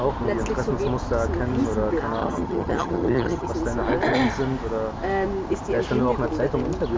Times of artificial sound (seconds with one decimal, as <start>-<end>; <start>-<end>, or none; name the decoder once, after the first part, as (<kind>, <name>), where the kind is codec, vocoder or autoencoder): 2.2-3.5 (vocoder, HiFi-GAN)